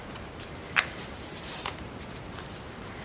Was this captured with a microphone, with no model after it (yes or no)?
yes